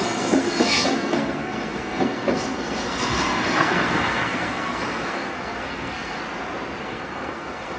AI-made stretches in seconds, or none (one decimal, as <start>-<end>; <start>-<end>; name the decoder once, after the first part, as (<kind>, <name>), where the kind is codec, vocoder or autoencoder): 0.0-6.2 (codec, SNAC); 6.8-7.8